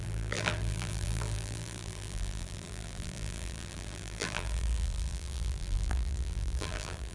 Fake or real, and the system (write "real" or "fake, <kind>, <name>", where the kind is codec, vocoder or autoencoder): fake, vocoder, BigVGAN v2